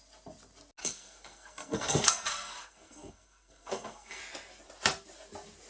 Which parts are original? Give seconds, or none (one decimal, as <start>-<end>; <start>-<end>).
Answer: 0.0-0.8; 4.2-5.7